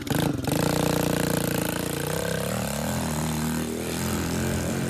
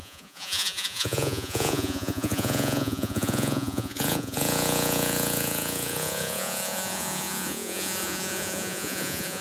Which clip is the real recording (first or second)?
first